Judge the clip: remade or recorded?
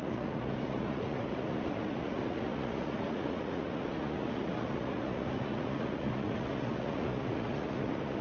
remade